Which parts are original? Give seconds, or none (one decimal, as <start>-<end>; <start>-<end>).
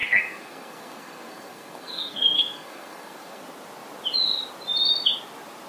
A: 3.4-5.7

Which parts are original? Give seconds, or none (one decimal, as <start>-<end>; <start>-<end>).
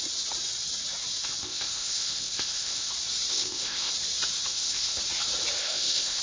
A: 0.0-1.4; 2.9-3.3; 3.9-4.5; 5.0-5.6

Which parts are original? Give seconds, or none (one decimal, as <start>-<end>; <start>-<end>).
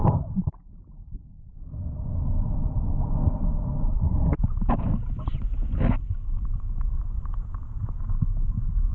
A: 0.8-8.9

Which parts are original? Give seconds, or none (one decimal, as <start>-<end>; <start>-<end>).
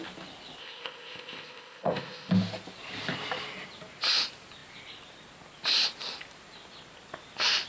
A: 0.0-0.6; 2.3-7.7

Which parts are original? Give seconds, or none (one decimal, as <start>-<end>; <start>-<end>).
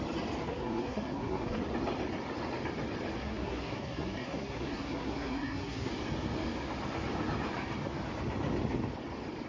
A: 0.0-0.4; 1.6-3.2; 5.9-9.5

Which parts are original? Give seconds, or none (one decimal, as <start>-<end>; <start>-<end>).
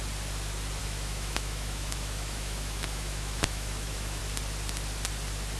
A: 0.0-0.8; 4.2-5.6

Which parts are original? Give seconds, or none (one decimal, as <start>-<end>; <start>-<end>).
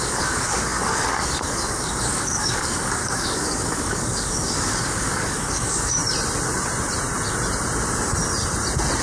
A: 6.0-9.0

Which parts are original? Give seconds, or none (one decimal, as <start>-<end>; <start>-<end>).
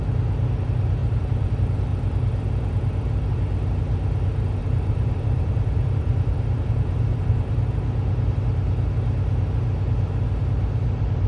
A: 0.0-1.0; 1.5-4.6; 7.5-11.3